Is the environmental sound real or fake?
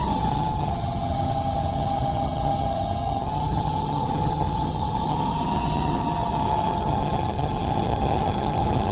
fake